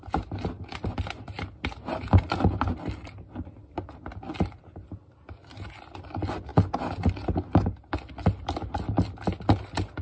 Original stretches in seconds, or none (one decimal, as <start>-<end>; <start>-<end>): 0.0-10.0